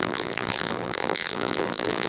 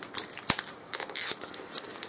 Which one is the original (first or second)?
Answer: second